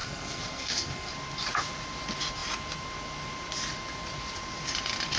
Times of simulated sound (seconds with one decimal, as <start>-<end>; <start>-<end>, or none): 0.0-1.1